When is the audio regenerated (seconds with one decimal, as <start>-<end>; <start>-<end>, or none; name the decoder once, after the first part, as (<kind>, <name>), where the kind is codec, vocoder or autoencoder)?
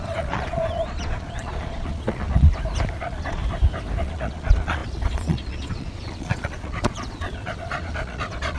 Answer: 0.0-2.5 (vocoder, Vocos); 3.0-3.4; 4.0-8.6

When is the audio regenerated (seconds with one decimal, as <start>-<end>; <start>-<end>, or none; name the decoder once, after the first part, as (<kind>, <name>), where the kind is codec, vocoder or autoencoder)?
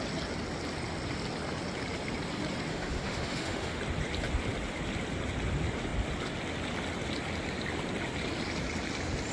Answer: 2.7-3.8 (autoencoder, DAC-VAE)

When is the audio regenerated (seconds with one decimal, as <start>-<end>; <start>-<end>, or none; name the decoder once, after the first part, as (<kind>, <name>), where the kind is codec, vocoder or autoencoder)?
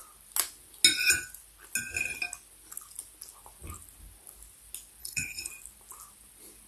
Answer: 5.0-5.5 (codec, HILCodec)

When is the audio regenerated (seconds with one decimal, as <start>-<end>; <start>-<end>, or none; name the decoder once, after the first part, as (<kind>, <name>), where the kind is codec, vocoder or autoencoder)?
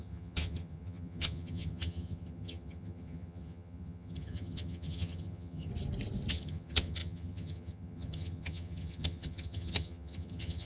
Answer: 0.0-5.7 (vocoder, HiFi-GAN); 6.3-10.7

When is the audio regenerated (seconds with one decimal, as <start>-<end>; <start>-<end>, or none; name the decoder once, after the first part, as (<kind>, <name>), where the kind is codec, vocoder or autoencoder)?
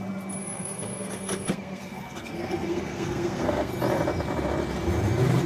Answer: 0.4-3.7 (codec, SNAC)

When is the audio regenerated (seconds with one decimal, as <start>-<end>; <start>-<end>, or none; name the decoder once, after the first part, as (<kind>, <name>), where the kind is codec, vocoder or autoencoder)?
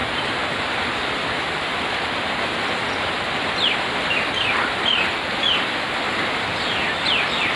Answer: none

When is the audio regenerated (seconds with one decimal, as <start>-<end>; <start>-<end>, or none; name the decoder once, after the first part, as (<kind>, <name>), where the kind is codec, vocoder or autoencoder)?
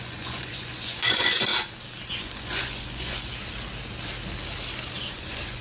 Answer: 0.0-1.5 (vocoder, Vocos); 2.1-3.3; 5.0-5.6